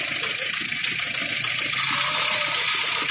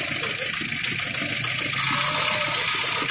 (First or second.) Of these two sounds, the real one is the second